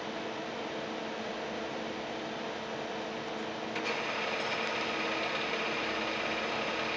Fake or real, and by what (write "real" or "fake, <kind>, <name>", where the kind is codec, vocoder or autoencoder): real